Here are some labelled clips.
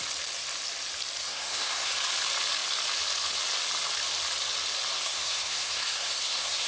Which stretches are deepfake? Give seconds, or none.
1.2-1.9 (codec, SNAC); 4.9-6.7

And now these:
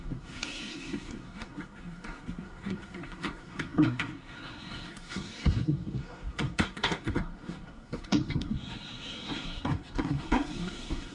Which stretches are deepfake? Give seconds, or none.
0.0-11.1 (codec, SNAC)